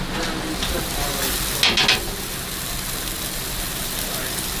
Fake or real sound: real